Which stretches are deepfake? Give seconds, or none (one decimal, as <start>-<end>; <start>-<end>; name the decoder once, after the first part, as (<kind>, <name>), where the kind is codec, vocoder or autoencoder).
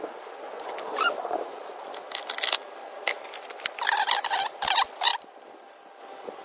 none